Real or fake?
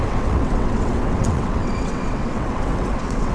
fake